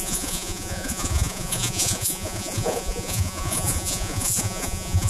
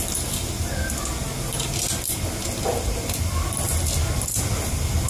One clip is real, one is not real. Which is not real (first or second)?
first